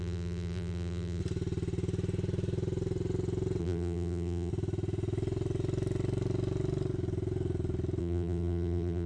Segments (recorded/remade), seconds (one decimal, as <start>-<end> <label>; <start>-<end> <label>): 0.0-1.2 remade; 1.2-3.6 recorded; 3.6-4.5 remade; 4.5-8.0 recorded; 8.0-9.1 remade